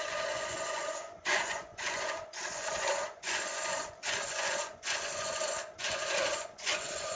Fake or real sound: fake